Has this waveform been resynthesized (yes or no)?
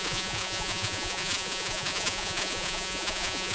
yes